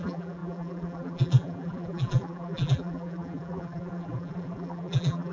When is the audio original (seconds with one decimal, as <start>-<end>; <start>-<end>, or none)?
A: none